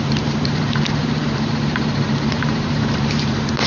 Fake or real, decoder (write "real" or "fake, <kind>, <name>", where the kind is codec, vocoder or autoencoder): fake, vocoder, BigVGAN v2